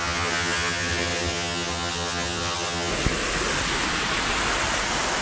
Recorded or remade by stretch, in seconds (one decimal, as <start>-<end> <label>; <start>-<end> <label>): 0.0-2.9 remade; 2.9-5.2 recorded